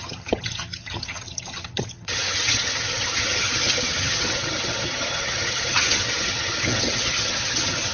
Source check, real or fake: fake